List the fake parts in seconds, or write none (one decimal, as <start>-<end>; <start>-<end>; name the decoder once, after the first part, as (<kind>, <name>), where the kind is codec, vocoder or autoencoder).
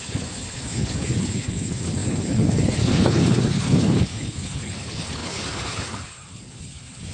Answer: 0.0-7.1 (codec, HILCodec)